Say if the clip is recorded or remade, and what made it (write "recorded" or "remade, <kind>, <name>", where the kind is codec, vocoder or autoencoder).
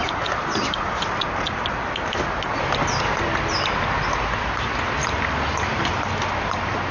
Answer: recorded